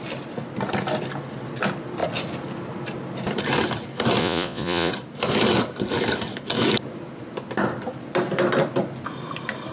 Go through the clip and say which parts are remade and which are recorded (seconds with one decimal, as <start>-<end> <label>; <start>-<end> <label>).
0.0-4.2 recorded; 4.2-4.9 remade; 4.9-9.7 recorded